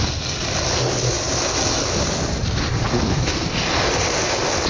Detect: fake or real real